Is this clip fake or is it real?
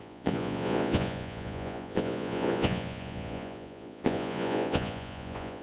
fake